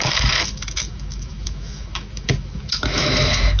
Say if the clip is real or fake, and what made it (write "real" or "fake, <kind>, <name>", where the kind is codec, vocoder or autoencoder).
fake, autoencoder, DAC-VAE